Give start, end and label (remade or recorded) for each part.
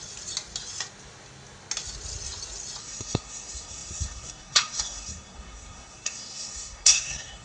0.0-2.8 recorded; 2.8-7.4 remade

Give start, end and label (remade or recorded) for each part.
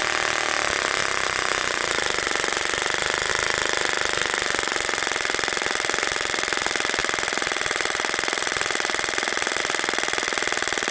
0.0-1.0 recorded; 1.0-3.3 remade; 3.3-7.0 recorded; 7.0-9.6 remade; 9.6-10.9 recorded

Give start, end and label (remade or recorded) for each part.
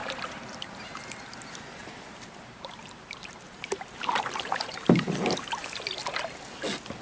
0.0-1.0 remade; 1.0-1.8 recorded; 1.8-6.0 remade; 6.0-7.0 recorded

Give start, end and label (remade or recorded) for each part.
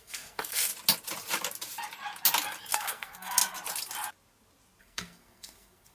0.0-0.7 remade; 0.7-2.7 recorded; 2.7-3.4 remade; 3.4-4.8 recorded; 4.8-5.9 remade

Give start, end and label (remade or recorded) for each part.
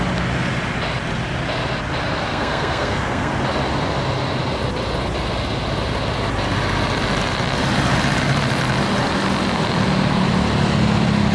0.0-2.3 recorded; 2.3-3.3 remade; 3.3-11.3 recorded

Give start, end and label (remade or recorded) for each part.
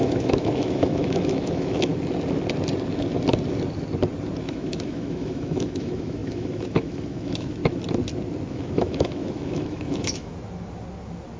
0.0-1.9 remade; 1.9-4.4 recorded; 4.4-7.6 remade; 7.6-8.5 recorded; 8.5-10.3 remade; 10.3-11.4 recorded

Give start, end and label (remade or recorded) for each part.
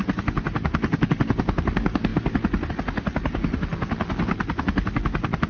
0.0-5.5 recorded